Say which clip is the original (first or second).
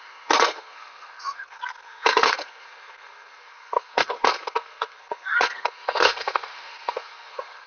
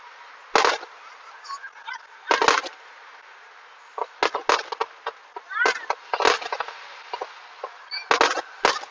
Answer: second